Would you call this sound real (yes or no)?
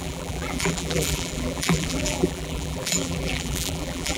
no